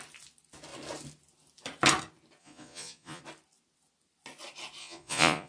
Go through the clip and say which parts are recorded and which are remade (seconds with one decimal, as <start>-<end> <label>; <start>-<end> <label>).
0.0-2.4 recorded; 2.4-3.2 remade; 3.2-4.8 recorded; 4.8-5.5 remade